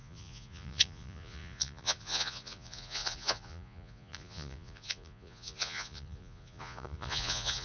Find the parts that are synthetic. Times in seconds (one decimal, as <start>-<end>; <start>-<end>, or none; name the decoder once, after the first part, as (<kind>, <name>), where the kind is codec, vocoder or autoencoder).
0.0-7.6 (vocoder, Vocos)